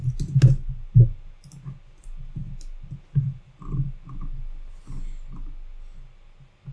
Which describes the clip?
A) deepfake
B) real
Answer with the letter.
B